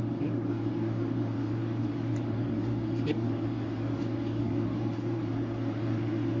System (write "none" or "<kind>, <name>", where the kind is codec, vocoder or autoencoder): codec, DAC